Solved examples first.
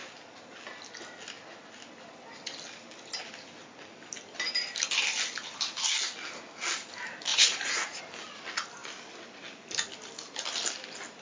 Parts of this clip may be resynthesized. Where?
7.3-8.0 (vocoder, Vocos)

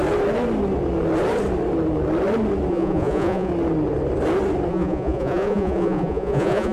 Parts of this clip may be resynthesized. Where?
2.7-3.5 (vocoder, Vocos); 4.7-6.7

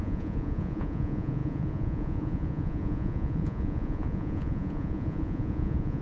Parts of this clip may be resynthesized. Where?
0.0-6.0 (vocoder, Vocos)

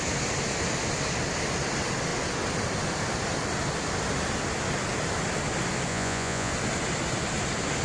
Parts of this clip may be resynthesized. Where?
5.9-6.5 (vocoder, Vocos)

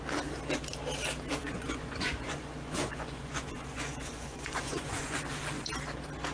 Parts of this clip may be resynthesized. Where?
1.4-5.2 (vocoder, Vocos)

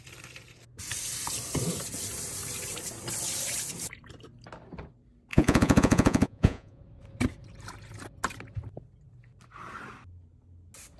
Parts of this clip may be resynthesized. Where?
5.3-6.8 (vocoder, Vocos)

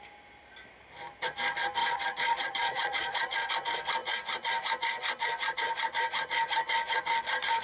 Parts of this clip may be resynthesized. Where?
1.8-3.5 (vocoder, Vocos)